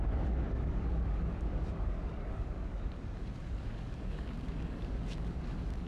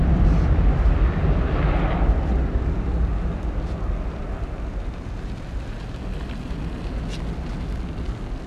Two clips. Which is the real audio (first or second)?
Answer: second